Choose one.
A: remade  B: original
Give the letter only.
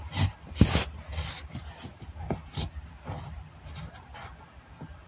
B